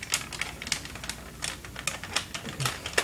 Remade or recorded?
recorded